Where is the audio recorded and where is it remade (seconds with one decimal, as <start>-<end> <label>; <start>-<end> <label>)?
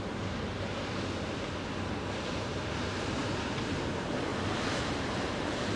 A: 0.0-0.7 remade; 0.7-2.1 recorded; 2.1-4.3 remade; 4.3-4.9 recorded; 4.9-5.8 remade